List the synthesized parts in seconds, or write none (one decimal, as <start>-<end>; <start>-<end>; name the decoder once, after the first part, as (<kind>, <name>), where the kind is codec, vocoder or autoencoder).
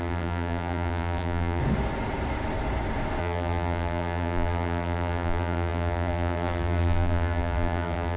0.0-1.6 (vocoder, BigVGAN v2); 3.2-8.2